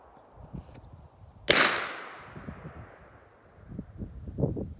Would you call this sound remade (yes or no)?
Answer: no